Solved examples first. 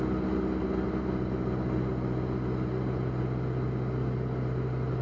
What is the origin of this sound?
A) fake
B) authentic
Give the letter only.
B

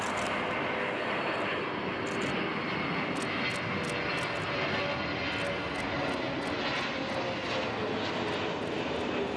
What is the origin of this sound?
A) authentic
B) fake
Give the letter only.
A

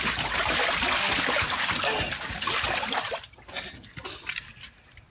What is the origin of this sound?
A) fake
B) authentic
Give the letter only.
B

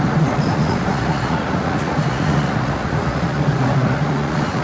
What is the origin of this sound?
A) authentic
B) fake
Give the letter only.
B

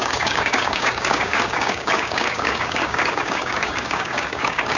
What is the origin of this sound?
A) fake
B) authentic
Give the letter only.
A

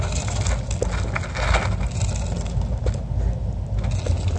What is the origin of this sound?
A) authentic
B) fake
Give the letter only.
A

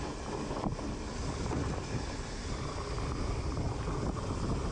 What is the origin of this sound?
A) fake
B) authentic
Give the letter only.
B